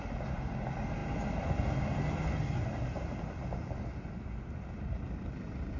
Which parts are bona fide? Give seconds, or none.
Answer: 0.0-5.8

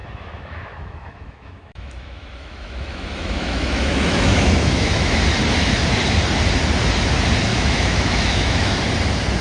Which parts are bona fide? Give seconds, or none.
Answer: 5.2-7.5; 8.8-9.4

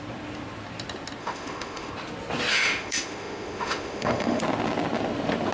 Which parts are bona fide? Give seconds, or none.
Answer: 0.0-1.2; 1.9-2.5; 4.4-5.5

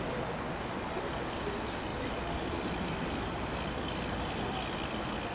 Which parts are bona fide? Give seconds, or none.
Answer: 0.0-5.3

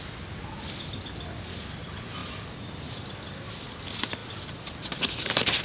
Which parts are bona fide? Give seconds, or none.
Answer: 0.0-5.6

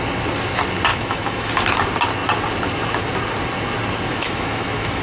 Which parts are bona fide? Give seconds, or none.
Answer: 0.0-0.9; 1.5-4.1